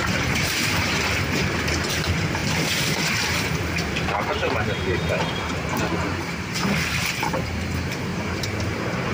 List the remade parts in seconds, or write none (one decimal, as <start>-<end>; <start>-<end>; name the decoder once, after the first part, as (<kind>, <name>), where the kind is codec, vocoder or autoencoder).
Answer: 0.0-9.1 (vocoder, BigVGAN v2)